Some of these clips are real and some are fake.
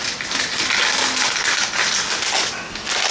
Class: real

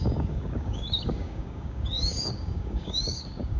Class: fake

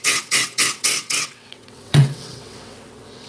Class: fake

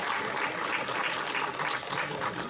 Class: real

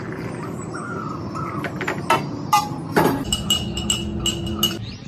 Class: real